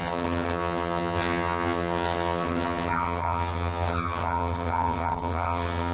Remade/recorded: remade